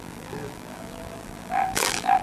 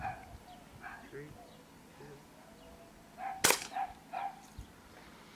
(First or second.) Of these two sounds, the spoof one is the first